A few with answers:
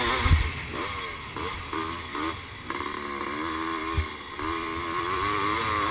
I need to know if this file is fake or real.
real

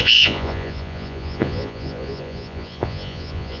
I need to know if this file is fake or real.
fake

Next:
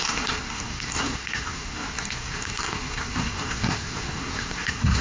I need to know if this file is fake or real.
fake